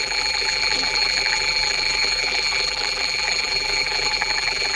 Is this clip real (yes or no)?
no